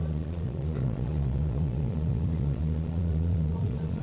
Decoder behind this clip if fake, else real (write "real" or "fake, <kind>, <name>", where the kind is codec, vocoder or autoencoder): fake, vocoder, Vocos